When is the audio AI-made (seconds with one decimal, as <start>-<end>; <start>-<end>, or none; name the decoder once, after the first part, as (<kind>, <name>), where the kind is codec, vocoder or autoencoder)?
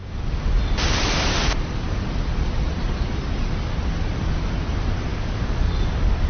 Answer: 5.1-5.7 (codec, DAC)